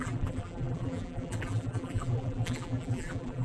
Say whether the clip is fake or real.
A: fake